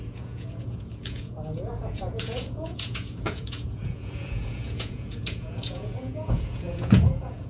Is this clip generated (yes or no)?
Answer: yes